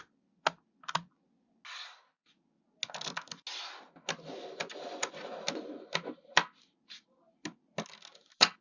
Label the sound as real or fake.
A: real